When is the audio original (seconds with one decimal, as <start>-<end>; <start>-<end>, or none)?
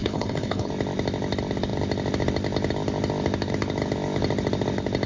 0.7-5.1